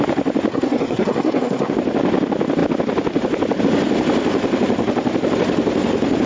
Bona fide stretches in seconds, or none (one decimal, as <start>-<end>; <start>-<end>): 0.0-0.5; 1.7-6.3